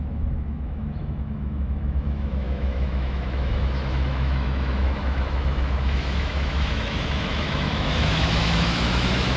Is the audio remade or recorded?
remade